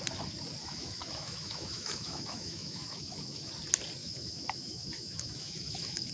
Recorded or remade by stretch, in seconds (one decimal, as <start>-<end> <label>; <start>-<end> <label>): 0.0-0.6 recorded; 0.6-3.5 remade; 3.5-4.0 recorded; 4.0-6.1 remade